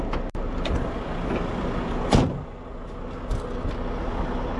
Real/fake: real